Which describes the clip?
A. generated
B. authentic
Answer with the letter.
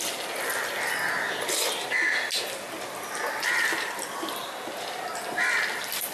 B